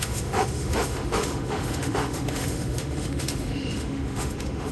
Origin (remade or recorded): remade